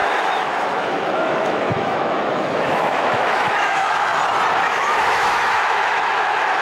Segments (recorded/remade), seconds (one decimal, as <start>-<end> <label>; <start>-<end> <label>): 0.0-4.1 remade; 4.1-4.7 recorded; 4.7-6.6 remade

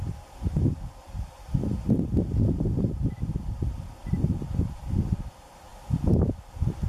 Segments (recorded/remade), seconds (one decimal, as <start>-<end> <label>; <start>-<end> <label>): 0.0-6.9 recorded

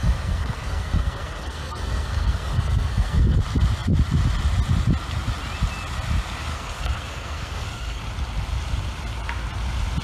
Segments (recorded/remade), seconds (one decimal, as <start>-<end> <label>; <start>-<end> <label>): 0.0-3.4 remade; 3.4-6.5 recorded; 6.5-8.0 remade; 8.0-10.0 recorded